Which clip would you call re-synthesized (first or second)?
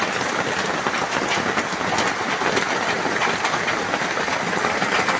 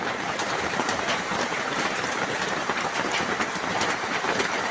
second